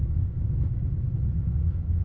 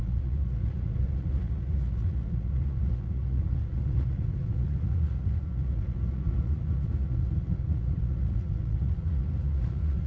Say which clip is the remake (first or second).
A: second